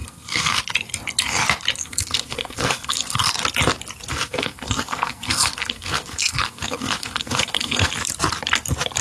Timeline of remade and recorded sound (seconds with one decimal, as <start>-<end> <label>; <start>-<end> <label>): 0.0-0.6 remade; 0.6-1.8 recorded; 1.8-3.3 remade; 3.3-4.1 recorded; 4.1-7.9 remade; 7.9-9.0 recorded